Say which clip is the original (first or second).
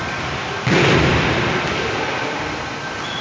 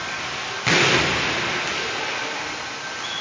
second